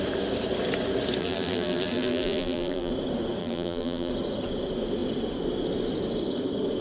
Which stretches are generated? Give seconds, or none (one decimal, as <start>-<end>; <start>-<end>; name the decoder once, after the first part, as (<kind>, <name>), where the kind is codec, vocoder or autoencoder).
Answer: 1.2-2.9 (vocoder, BigVGAN v2); 3.4-4.1